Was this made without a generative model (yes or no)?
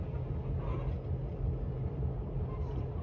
yes